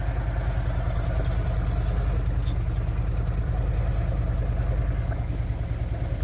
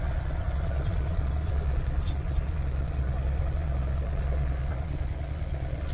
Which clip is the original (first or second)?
first